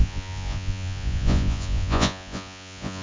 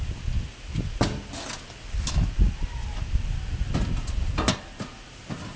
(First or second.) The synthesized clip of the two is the first